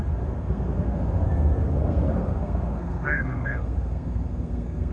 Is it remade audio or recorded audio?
remade